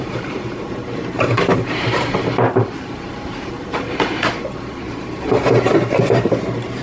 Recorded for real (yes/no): no